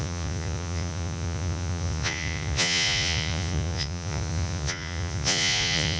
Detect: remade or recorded remade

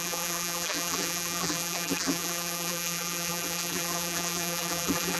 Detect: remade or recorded remade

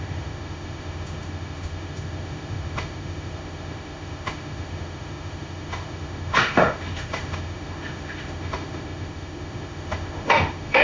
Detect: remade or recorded remade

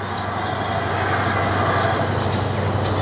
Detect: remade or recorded recorded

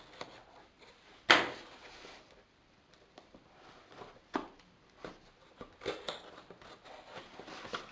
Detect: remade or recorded recorded